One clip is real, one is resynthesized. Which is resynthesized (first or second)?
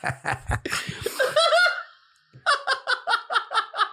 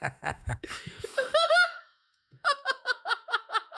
second